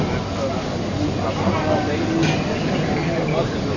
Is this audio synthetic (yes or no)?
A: no